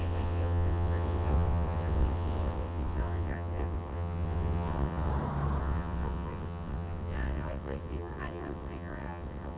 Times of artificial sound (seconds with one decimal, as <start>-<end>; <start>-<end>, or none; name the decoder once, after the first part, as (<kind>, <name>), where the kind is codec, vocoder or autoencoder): 0.0-5.1 (vocoder, WaveNeXt); 5.6-9.6